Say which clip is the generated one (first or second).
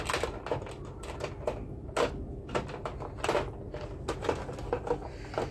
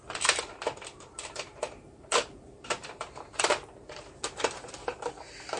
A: second